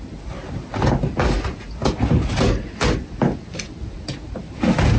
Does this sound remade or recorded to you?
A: recorded